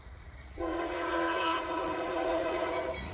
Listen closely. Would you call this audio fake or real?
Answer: fake